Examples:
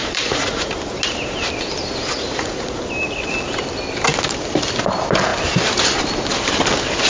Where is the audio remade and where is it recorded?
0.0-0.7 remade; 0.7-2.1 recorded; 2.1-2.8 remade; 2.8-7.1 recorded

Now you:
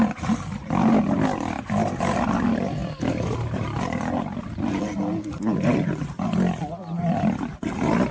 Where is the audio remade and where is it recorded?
0.0-8.1 recorded

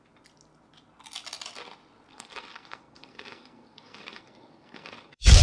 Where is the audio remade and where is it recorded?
0.0-2.1 recorded; 2.1-5.4 remade

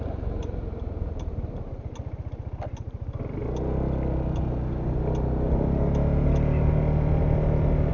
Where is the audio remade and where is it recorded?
0.0-7.9 recorded

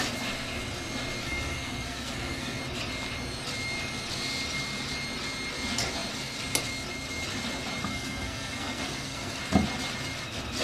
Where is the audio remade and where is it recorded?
0.0-1.2 recorded; 1.2-2.6 remade; 2.6-7.9 recorded; 7.9-9.4 remade; 9.4-10.6 recorded